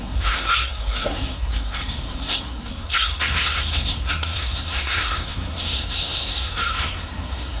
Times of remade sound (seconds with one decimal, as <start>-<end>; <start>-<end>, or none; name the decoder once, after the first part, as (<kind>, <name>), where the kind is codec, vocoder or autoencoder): 0.0-7.6 (codec, SNAC)